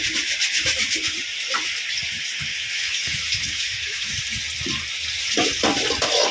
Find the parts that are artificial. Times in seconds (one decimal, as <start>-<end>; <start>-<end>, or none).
2.5-4.1